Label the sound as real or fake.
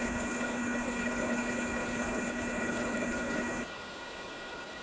fake